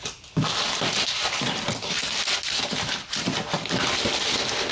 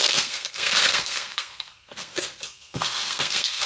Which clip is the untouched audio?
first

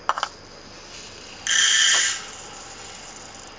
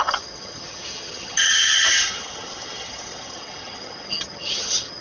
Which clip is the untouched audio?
first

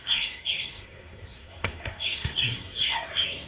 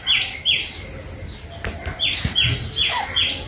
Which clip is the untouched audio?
second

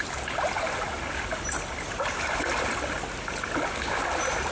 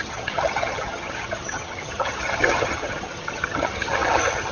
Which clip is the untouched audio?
first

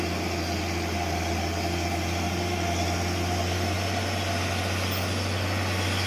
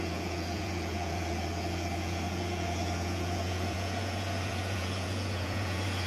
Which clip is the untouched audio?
first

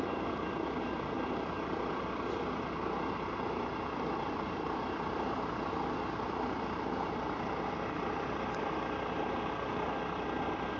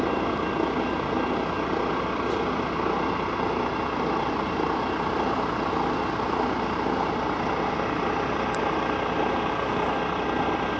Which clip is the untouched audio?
second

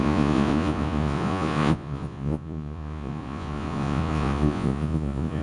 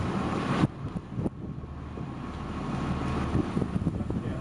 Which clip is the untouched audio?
second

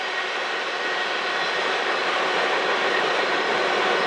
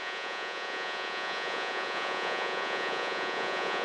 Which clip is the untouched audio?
first